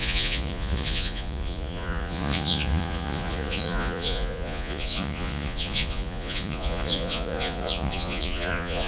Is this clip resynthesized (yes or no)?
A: yes